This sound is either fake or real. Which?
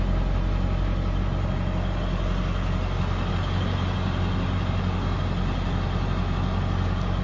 real